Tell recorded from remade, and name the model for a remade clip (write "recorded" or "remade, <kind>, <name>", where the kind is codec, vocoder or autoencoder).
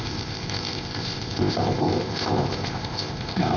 remade, codec, ZipCodec